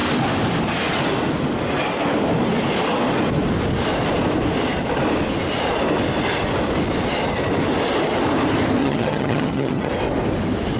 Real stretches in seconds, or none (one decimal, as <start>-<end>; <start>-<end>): 0.0-8.8; 9.9-10.8